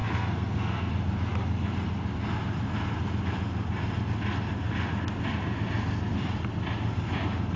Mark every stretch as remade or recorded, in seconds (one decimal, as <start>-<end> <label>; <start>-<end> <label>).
0.0-0.9 remade; 0.9-7.6 recorded